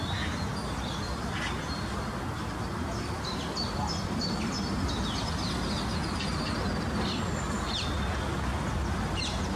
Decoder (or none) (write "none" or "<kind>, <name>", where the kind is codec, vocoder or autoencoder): none